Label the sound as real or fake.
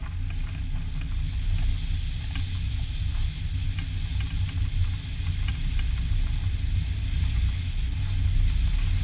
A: real